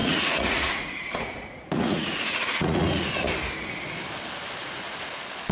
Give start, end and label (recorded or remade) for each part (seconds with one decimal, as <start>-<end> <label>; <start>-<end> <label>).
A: 0.0-3.3 remade; 3.3-4.6 recorded; 4.6-5.1 remade; 5.1-5.5 recorded